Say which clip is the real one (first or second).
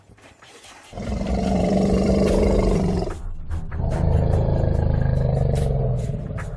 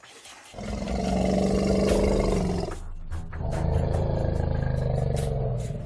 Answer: second